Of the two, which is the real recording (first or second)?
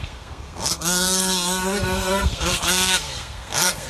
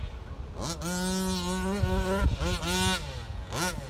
second